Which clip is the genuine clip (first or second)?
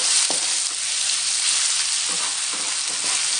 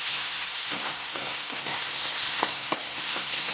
first